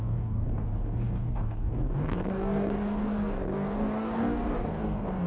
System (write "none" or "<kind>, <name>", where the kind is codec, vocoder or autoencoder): codec, DAC